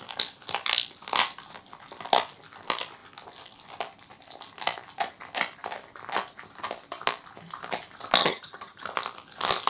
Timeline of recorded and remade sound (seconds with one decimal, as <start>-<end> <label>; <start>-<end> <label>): 0.0-8.2 recorded; 8.2-8.8 remade; 8.8-9.7 recorded